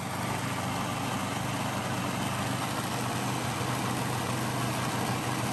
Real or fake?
real